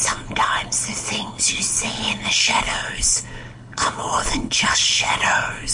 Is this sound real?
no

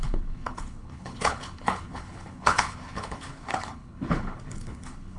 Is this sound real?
no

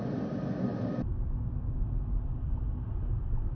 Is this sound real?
yes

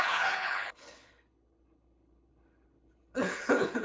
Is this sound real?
no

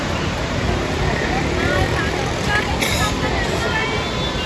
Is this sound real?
yes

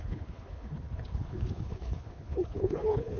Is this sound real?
no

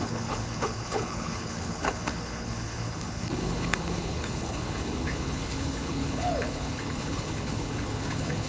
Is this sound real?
no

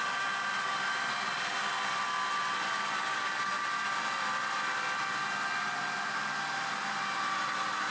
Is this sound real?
yes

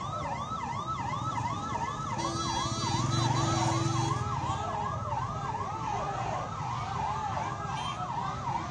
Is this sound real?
yes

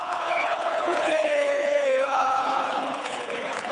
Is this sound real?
no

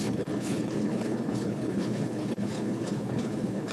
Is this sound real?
no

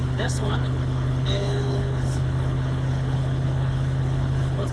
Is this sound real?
no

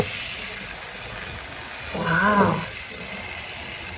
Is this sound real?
yes